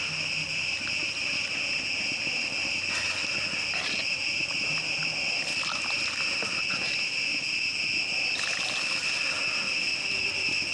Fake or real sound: real